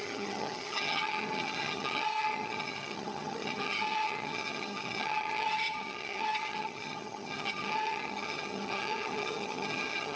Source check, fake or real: fake